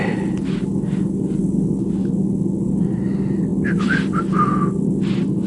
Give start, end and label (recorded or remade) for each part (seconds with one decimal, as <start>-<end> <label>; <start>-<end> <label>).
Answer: 0.0-5.5 recorded